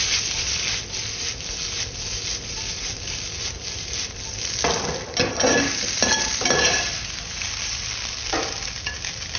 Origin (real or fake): real